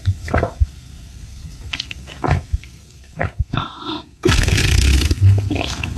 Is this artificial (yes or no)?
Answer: yes